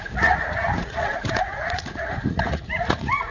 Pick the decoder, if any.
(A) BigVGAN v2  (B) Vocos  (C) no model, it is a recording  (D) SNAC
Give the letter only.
B